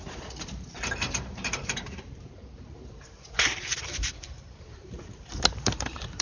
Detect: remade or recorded remade